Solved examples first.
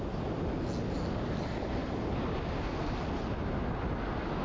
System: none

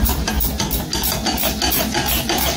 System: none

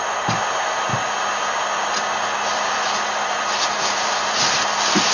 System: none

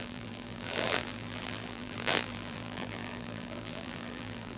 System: vocoder, BigVGAN v2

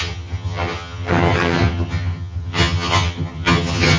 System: vocoder, HiFi-GAN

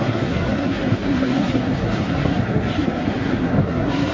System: codec, SNAC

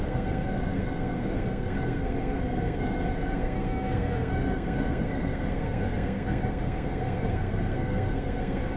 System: codec, SNAC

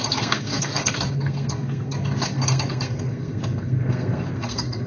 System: codec, SNAC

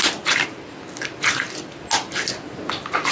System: none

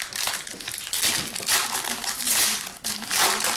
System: none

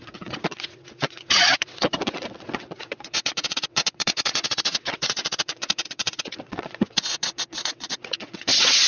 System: vocoder, WaveNeXt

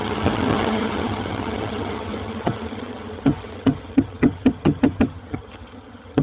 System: vocoder, HiFi-GAN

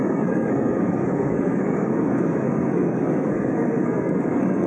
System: codec, SNAC